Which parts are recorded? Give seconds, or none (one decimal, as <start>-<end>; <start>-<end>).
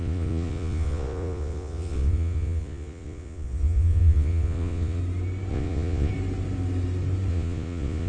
5.0-5.5; 6.1-7.3